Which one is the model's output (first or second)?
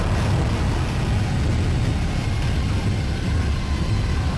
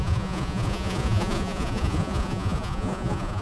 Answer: second